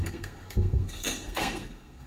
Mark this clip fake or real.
fake